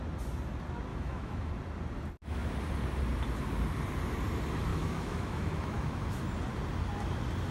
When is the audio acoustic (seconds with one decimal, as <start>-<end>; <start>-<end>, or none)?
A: 0.0-0.9; 1.5-4.7; 6.2-7.5